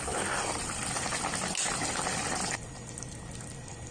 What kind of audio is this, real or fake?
real